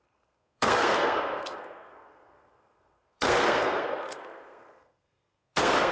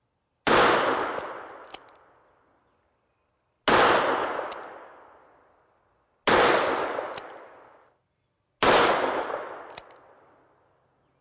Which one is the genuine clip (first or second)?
second